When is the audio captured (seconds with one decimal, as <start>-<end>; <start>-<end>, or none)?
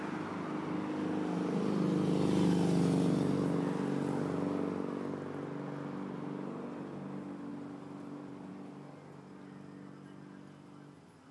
0.0-7.5; 8.5-11.3